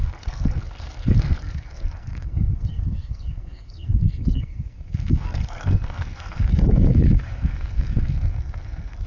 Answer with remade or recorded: remade